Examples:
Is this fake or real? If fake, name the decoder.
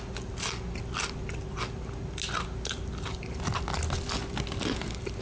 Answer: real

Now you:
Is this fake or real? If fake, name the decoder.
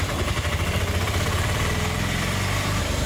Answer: fake, vocoder, BigVGAN v2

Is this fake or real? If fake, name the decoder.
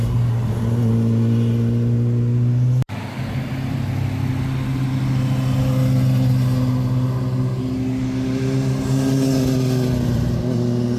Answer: real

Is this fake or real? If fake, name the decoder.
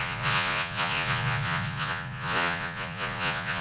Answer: fake, vocoder, Vocos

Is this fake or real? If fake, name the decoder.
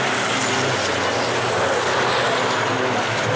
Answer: real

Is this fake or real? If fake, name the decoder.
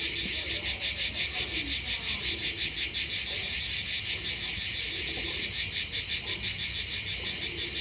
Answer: real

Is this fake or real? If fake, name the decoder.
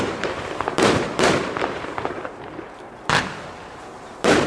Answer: fake, vocoder, BigVGAN v2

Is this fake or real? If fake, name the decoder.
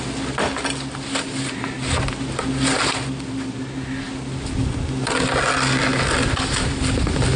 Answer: real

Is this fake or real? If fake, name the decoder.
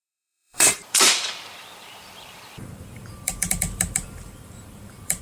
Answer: fake, vocoder, BigVGAN v2